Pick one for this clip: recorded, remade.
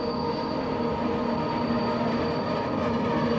recorded